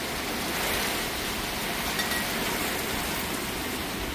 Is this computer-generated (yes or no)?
no